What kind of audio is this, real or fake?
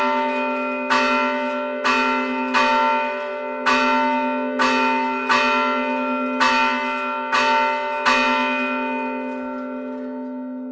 real